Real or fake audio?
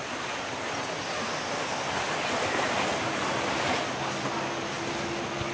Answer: real